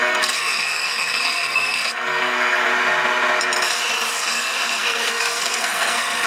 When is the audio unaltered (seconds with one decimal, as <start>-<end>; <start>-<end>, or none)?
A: 2.7-4.1